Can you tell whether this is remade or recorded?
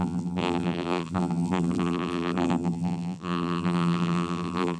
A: remade